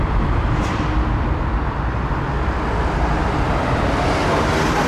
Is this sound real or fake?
real